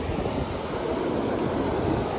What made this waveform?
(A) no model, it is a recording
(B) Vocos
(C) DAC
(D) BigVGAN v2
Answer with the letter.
A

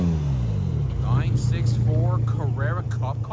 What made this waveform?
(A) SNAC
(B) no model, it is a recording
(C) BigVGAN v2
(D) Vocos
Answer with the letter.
B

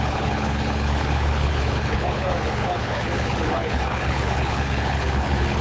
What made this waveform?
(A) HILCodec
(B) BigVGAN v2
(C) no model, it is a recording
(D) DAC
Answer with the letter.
A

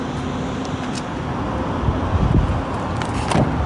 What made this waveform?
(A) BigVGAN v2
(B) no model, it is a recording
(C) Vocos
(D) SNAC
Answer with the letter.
B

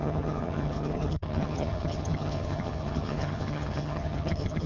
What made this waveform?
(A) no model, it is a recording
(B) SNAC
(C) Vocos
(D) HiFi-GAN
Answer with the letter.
D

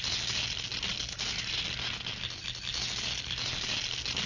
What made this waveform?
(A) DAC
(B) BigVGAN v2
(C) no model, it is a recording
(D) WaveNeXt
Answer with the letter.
C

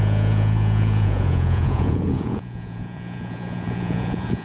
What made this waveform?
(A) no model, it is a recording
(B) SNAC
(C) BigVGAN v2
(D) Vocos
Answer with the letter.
D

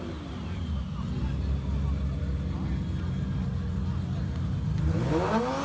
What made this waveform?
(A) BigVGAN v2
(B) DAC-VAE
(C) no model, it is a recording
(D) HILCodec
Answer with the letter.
C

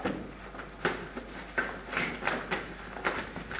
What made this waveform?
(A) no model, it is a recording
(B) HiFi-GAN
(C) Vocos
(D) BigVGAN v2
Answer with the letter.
A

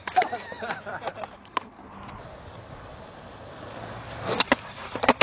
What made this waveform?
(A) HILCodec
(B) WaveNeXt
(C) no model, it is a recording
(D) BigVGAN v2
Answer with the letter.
C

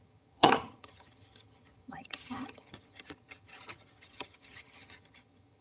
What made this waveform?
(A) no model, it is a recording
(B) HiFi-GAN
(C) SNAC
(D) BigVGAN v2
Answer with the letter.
B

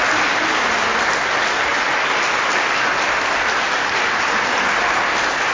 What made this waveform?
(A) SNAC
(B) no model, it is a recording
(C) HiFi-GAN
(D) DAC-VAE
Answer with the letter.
B